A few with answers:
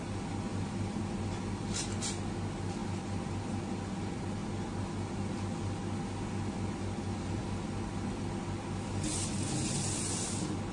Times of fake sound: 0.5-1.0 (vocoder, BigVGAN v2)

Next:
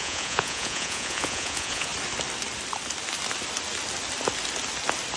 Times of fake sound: 0.0-1.9 (vocoder, Vocos)

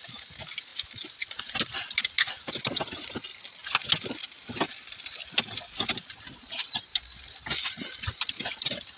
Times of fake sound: none